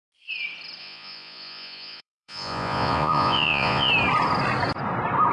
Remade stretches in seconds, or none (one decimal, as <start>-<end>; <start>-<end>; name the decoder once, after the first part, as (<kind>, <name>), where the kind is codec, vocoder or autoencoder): 0.8-3.9 (vocoder, Vocos)